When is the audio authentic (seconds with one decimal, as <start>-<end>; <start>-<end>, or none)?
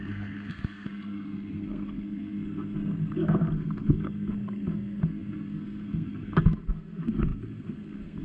none